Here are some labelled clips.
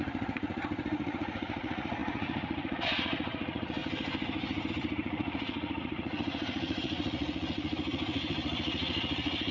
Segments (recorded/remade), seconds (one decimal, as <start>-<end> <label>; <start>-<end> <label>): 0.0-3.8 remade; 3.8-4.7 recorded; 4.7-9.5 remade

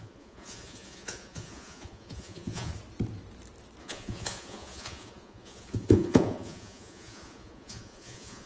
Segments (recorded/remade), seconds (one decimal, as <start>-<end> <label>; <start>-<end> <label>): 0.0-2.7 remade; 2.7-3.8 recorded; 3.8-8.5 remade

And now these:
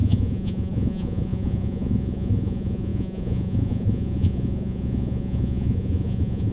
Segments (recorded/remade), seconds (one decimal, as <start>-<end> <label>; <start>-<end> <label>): 0.0-6.5 remade